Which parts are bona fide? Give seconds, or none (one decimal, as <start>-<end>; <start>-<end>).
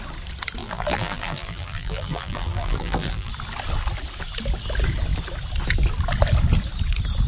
0.0-0.6; 3.3-7.3